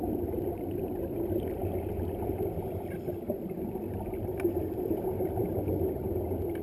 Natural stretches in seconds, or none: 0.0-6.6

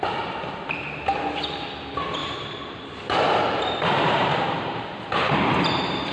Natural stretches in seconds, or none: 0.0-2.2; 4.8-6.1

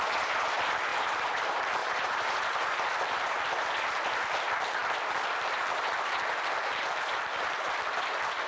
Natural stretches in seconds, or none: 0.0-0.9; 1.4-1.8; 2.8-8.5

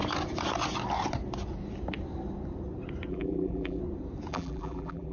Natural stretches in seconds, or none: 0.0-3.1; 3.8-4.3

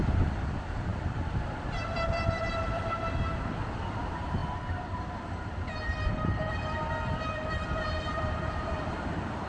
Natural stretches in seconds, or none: none

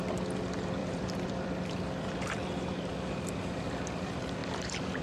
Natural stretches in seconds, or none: 0.0-0.8; 2.9-4.4

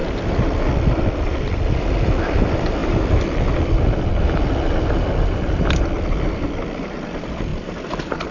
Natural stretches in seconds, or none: 7.5-8.3

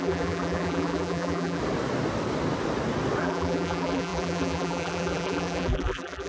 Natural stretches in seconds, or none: 1.6-3.2